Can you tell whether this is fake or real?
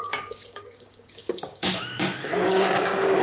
fake